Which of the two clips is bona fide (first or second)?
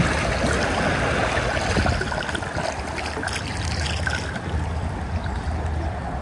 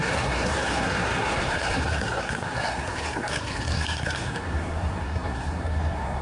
first